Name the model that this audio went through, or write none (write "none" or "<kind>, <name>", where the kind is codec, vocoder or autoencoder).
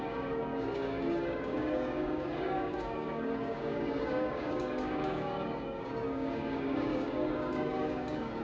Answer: codec, DAC